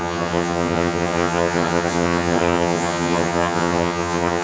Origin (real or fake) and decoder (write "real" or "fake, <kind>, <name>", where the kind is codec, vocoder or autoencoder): fake, vocoder, HiFi-GAN